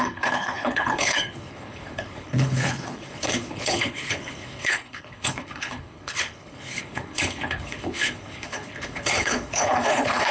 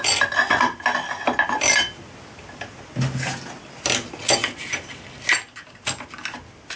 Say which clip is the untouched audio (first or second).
second